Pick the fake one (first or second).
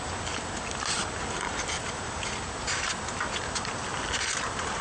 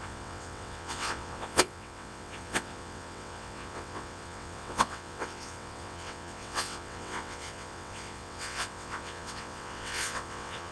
second